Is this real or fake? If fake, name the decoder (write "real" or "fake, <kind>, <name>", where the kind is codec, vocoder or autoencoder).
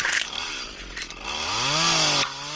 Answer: real